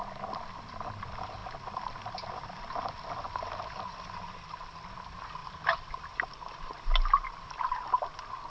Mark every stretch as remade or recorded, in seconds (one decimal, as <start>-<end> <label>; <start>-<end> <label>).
0.0-5.4 recorded; 5.4-6.7 remade; 6.7-8.5 recorded